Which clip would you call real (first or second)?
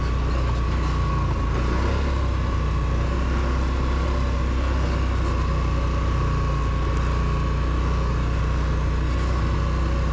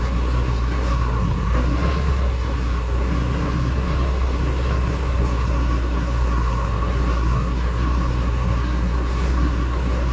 first